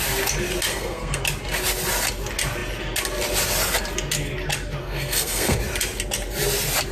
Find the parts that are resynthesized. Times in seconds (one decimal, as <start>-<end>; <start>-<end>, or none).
0.7-1.2; 4.8-5.6